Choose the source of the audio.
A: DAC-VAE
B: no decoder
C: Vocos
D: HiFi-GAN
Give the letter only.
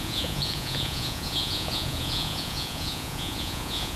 C